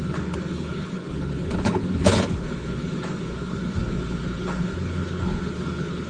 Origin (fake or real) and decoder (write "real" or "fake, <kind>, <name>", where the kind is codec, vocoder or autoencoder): fake, codec, HILCodec